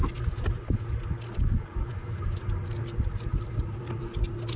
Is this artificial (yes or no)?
no